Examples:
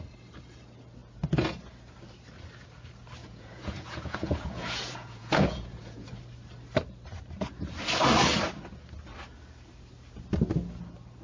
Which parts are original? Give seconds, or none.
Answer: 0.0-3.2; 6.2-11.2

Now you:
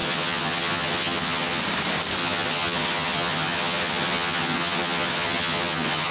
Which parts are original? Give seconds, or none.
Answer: 1.6-2.2